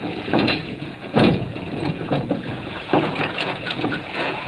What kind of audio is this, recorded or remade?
remade